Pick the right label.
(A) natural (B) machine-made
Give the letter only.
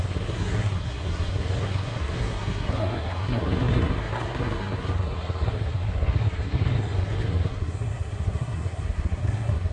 B